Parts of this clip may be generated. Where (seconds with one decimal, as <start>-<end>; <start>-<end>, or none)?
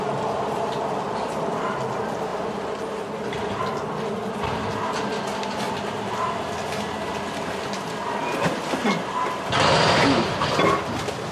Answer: none